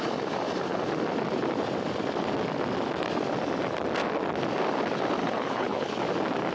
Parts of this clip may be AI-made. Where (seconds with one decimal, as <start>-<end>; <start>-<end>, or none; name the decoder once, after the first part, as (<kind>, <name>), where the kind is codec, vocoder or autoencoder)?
5.2-6.0 (codec, HILCodec)